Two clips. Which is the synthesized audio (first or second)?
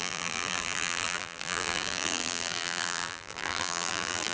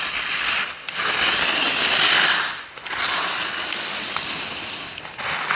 first